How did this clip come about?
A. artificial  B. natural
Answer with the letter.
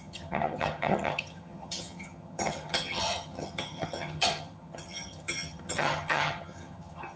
A